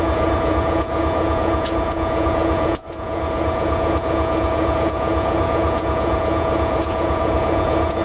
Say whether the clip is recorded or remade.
remade